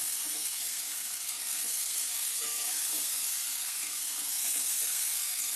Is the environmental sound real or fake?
fake